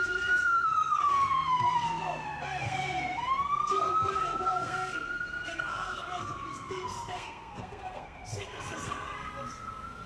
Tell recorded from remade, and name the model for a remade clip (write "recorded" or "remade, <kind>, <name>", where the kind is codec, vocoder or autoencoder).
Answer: remade, codec, SNAC